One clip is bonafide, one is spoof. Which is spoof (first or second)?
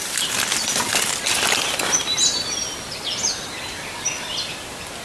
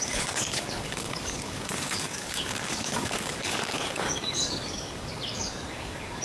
second